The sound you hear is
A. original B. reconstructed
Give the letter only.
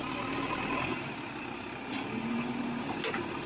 A